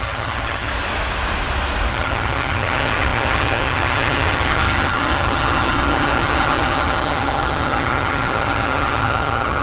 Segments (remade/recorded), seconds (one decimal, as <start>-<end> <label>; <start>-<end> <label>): 0.0-0.7 remade; 0.7-1.9 recorded; 1.9-9.6 remade